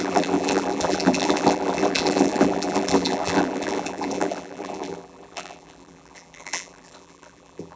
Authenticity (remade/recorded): remade